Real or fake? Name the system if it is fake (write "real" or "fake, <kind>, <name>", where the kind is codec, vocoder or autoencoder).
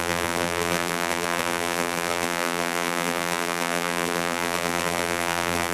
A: fake, vocoder, BigVGAN v2